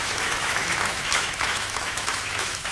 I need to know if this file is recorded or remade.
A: remade